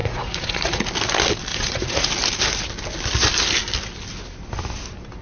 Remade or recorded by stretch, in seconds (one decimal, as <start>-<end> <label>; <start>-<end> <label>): 0.0-0.9 remade; 0.9-1.5 recorded; 1.5-2.1 remade; 2.1-5.2 recorded